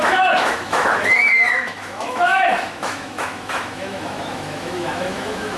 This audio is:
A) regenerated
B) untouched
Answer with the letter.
A